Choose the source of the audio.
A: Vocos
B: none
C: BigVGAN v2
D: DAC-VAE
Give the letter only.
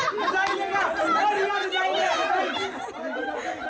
B